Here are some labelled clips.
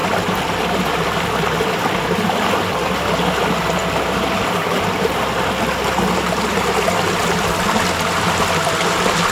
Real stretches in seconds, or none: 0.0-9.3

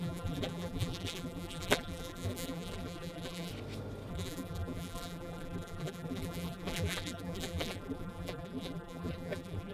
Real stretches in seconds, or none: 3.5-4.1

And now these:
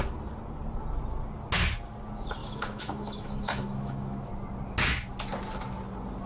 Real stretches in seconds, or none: 0.0-2.4; 4.3-6.3

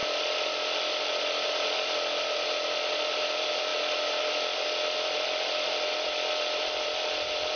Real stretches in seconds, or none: 0.0-7.6

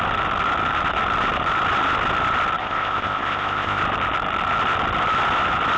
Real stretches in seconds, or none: 0.0-2.6; 3.8-5.8

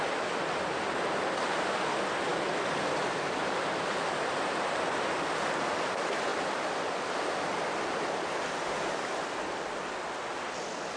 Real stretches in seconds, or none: 0.0-11.0

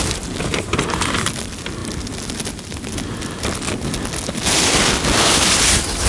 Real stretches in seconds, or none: 0.0-6.1

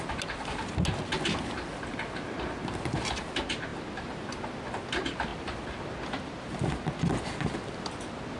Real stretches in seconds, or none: 0.0-5.3; 6.6-8.4